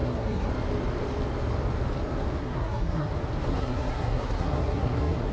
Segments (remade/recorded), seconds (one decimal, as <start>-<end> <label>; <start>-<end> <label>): 0.0-0.5 remade; 0.5-2.4 recorded; 2.4-3.1 remade; 3.1-3.5 recorded; 3.5-5.3 remade